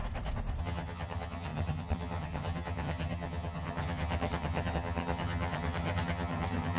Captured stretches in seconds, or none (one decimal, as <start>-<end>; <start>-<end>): 0.0-0.6